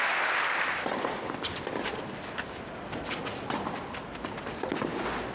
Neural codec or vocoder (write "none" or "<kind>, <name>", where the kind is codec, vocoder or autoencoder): none